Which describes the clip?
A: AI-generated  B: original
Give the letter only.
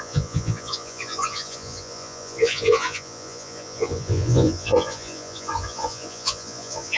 A